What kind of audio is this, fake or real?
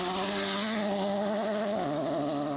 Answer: real